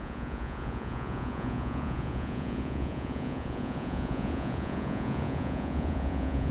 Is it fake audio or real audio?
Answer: fake